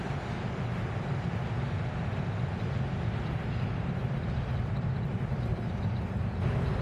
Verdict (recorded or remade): recorded